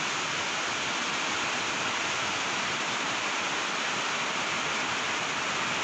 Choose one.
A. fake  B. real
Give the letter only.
B